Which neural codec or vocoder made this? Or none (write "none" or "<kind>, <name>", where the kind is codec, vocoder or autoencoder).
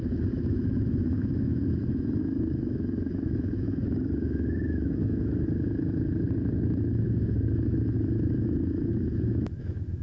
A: autoencoder, DAC-VAE